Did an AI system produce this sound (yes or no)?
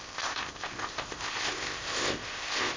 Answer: yes